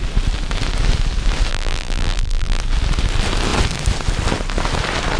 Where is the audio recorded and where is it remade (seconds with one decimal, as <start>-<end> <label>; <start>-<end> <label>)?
0.0-1.5 recorded; 1.5-2.6 remade; 2.6-5.2 recorded